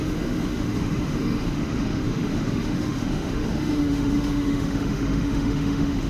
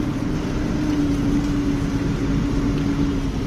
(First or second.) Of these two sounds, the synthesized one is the first